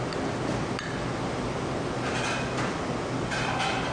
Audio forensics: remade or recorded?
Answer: recorded